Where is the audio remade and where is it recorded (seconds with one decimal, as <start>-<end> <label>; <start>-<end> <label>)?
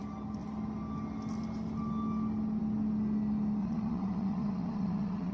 0.0-3.6 recorded; 3.6-5.3 remade